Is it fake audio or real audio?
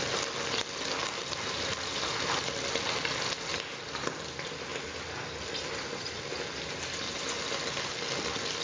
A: real